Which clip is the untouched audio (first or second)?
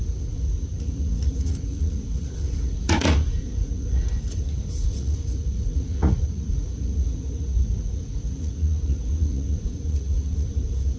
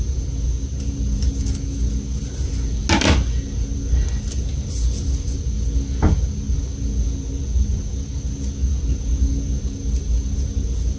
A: second